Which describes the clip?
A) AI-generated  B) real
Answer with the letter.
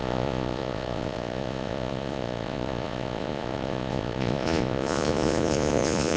A